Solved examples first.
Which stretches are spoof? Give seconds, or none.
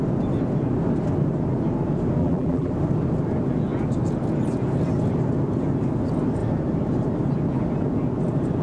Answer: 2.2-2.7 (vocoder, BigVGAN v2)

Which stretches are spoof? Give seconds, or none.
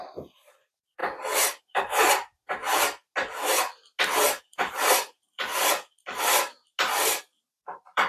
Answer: 0.0-1.0 (vocoder, BigVGAN v2); 1.6-2.6; 4.4-5.5; 7.2-8.1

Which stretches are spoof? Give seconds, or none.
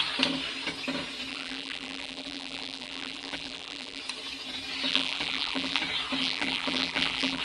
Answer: 1.3-4.0 (vocoder, BigVGAN v2); 4.9-5.8; 6.2-7.4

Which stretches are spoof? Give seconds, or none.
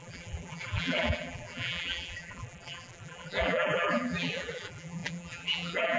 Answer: 0.0-6.0 (vocoder, BigVGAN v2)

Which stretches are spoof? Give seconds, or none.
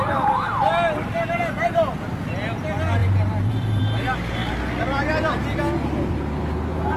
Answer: 3.0-3.8 (vocoder, BigVGAN v2)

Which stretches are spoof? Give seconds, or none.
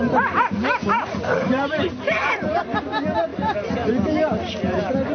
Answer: 1.3-2.8 (vocoder, BigVGAN v2)